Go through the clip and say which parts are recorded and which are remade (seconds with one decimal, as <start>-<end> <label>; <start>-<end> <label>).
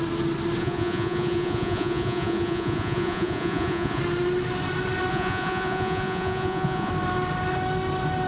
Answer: 0.0-0.6 recorded; 0.6-4.0 remade; 4.0-5.1 recorded; 5.1-6.9 remade; 6.9-8.3 recorded